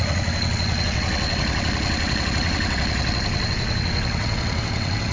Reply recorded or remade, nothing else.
remade